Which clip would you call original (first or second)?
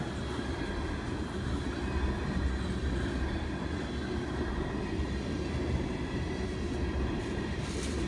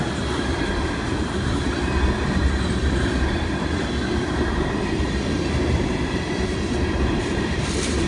first